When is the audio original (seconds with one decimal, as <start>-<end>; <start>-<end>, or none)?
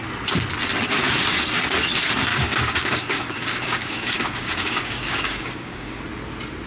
0.0-2.3; 6.0-6.7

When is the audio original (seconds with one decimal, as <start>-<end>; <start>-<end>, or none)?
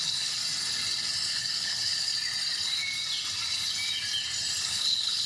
0.4-1.3; 2.1-4.6